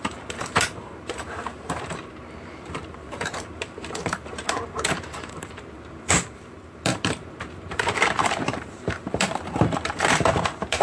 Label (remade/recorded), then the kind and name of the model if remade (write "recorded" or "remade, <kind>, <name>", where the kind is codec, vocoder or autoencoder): remade, vocoder, BigVGAN v2